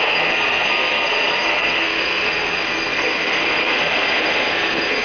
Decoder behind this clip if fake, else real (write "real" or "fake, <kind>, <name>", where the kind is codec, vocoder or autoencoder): fake, codec, SNAC